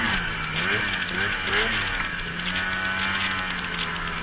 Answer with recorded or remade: recorded